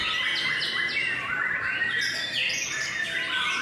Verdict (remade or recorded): recorded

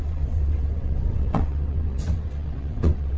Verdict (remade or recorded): remade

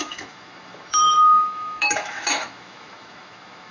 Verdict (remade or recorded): remade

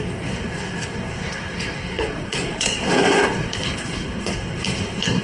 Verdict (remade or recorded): remade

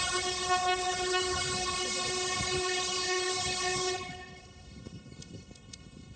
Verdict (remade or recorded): remade